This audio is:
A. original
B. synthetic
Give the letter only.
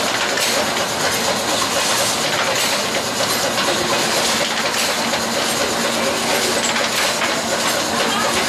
A